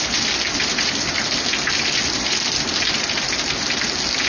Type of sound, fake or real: real